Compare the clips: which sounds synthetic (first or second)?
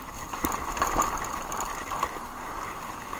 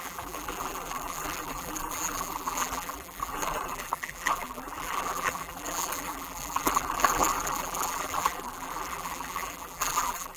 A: second